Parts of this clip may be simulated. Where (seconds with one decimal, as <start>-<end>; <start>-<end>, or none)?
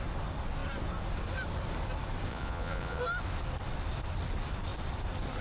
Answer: 2.3-3.0